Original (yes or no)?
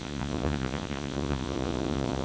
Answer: no